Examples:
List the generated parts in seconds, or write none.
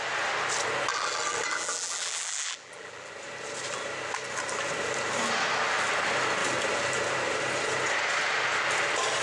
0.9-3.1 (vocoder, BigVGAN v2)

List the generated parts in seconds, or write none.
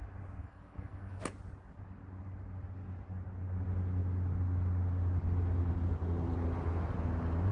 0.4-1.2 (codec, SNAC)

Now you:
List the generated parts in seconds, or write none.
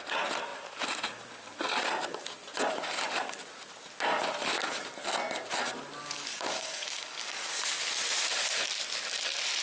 6.0-7.8 (codec, DAC)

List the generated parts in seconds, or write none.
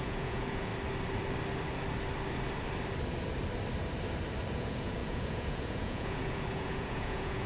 0.0-0.7 (vocoder, Vocos); 4.6-7.5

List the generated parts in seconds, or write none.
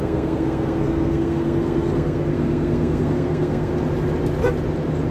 0.0-3.7 (codec, SNAC)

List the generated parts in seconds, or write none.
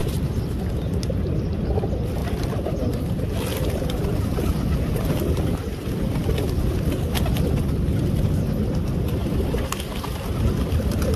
0.0-0.6 (vocoder, BigVGAN v2); 2.2-6.5